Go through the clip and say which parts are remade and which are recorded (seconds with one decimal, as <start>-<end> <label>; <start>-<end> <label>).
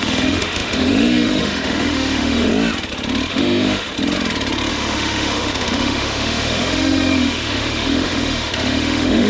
0.0-2.5 remade; 2.5-3.3 recorded; 3.3-3.9 remade; 3.9-4.7 recorded; 4.7-9.3 remade